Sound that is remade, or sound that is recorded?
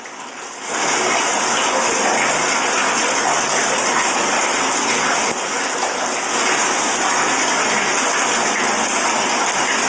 recorded